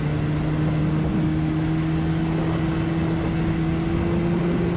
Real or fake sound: real